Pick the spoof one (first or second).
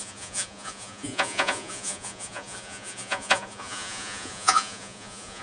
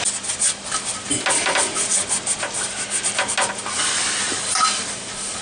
first